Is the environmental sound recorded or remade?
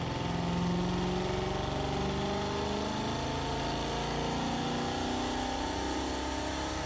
recorded